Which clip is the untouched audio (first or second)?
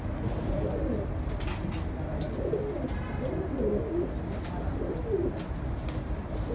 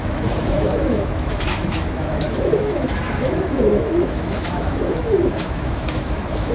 first